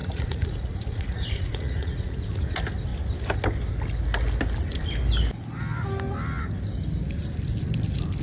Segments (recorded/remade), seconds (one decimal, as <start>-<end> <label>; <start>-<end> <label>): 0.0-2.1 remade; 2.1-8.2 recorded